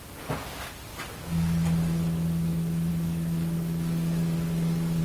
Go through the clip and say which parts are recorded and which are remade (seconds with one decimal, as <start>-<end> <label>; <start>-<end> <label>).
0.0-0.9 recorded; 0.9-2.0 remade; 2.0-2.9 recorded; 2.9-5.0 remade